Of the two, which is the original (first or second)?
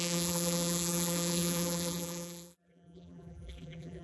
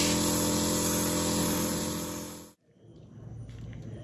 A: second